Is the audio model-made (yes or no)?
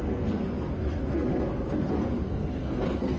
yes